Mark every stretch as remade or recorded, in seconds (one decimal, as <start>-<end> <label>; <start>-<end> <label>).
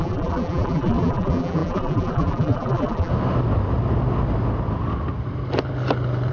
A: 0.0-3.1 remade; 3.1-6.3 recorded